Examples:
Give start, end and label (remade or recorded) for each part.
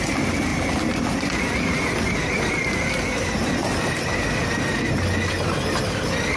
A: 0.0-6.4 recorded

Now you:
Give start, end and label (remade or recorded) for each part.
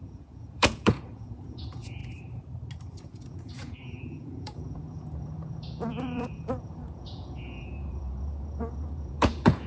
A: 0.0-2.0 remade; 2.0-3.0 recorded; 3.0-9.7 remade